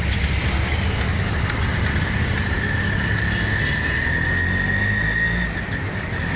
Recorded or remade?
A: recorded